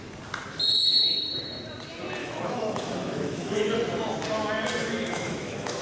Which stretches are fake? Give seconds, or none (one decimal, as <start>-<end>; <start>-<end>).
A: 2.2-3.7; 4.8-5.8